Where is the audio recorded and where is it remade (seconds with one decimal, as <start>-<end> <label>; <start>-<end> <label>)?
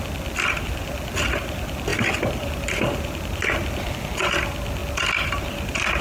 0.0-6.0 recorded